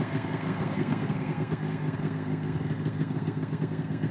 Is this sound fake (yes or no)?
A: yes